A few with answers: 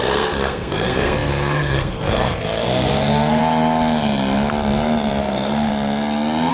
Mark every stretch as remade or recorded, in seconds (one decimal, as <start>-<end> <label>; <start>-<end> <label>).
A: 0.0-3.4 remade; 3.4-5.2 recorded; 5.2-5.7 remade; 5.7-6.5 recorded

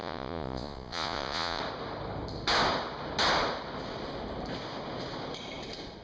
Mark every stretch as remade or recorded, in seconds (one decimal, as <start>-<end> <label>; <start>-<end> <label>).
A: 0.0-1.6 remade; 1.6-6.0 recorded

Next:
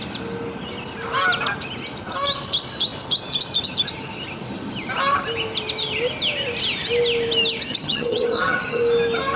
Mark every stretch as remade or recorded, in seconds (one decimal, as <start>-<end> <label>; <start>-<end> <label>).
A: 0.0-7.7 recorded; 7.7-8.8 remade; 8.8-9.4 recorded

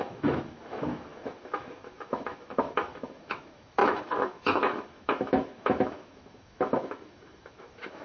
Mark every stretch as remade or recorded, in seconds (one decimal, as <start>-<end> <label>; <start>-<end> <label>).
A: 0.0-8.0 remade